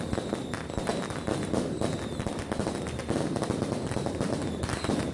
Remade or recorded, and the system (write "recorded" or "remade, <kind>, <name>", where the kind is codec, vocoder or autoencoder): recorded